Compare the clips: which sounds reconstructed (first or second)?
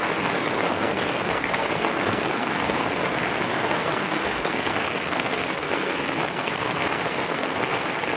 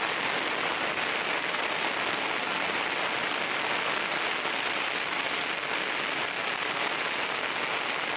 first